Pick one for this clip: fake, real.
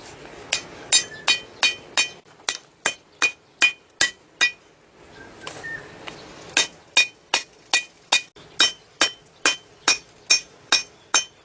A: real